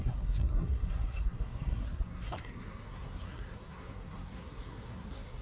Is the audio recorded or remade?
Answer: remade